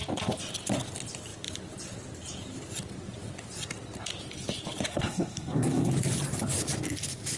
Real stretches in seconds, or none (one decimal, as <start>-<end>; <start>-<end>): 0.0-4.9; 5.9-7.4